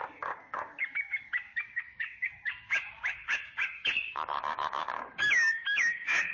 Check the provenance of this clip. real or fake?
fake